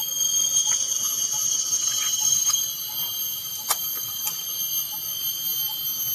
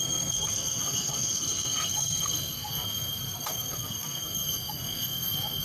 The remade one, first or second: second